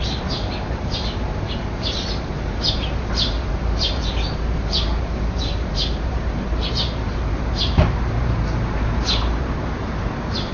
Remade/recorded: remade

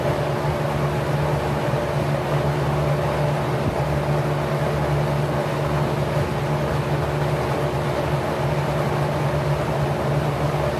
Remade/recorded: recorded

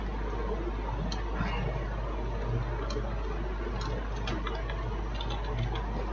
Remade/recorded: recorded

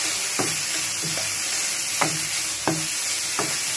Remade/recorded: recorded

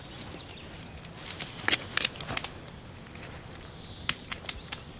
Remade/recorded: recorded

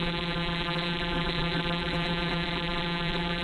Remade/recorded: remade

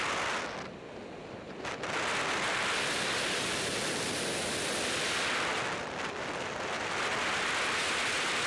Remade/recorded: recorded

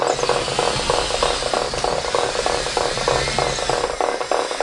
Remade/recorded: recorded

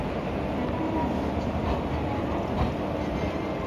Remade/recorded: recorded